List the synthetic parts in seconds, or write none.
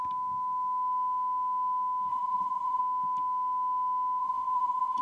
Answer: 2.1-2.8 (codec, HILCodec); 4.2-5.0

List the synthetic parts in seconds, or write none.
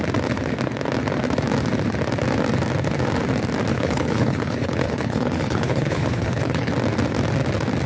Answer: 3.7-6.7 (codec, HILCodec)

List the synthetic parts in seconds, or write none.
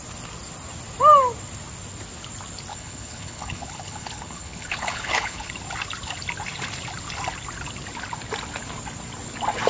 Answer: 2.7-5.5 (codec, HILCodec)